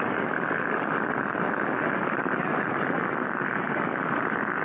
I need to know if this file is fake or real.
real